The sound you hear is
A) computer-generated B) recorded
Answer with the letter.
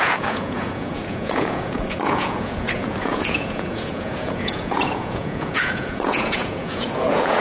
A